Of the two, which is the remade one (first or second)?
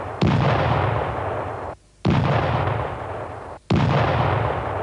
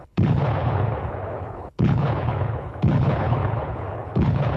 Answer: second